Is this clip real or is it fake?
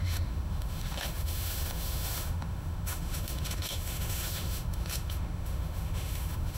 fake